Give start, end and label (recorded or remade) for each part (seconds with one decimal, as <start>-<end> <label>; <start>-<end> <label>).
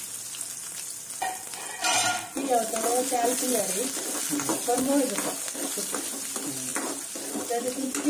0.0-8.1 recorded